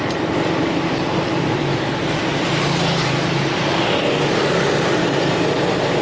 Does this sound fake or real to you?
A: real